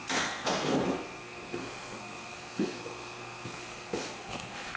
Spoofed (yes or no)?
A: yes